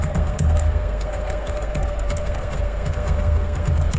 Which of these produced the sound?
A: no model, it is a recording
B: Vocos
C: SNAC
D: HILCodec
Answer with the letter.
C